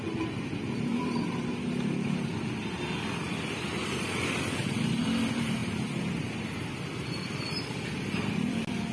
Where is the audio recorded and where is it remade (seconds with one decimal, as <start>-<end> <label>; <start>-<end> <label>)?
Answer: 0.0-8.9 recorded